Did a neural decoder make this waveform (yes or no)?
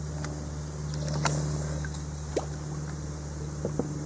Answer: yes